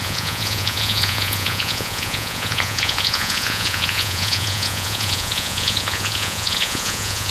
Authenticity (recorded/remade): remade